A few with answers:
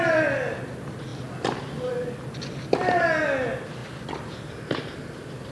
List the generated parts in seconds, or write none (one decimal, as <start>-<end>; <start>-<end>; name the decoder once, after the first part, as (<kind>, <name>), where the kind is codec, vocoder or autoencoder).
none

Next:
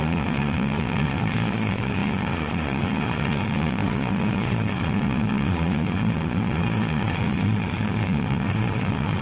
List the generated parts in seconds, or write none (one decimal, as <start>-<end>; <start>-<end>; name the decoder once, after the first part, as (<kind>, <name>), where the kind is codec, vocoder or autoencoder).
0.0-9.2 (vocoder, Vocos)

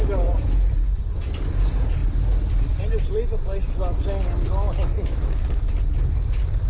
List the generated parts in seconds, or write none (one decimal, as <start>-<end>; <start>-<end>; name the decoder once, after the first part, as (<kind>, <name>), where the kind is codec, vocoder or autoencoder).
2.0-2.8 (vocoder, BigVGAN v2)

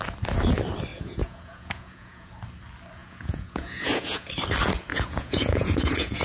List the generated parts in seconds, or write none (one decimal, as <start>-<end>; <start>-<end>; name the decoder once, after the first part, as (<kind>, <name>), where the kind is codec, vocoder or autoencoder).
0.9-2.3 (vocoder, Vocos); 3.0-4.3; 4.9-6.2

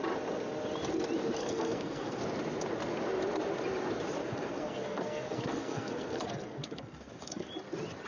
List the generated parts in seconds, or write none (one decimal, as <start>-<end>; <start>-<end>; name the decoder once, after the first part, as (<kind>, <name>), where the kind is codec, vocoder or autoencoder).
1.4-2.2 (codec, SNAC); 4.2-7.5

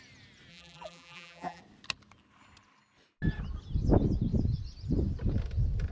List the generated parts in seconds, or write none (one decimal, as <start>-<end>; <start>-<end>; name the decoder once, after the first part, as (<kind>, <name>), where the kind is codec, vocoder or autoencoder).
0.5-1.6 (vocoder, BigVGAN v2)

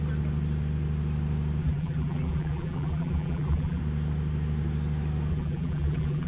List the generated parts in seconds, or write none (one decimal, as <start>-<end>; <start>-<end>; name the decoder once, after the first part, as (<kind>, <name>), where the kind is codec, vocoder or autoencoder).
1.6-3.8 (vocoder, BigVGAN v2); 5.3-6.3

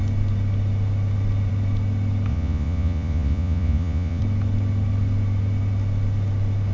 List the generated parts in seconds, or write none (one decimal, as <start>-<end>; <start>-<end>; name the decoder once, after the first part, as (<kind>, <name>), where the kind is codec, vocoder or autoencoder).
2.3-4.2 (vocoder, Vocos)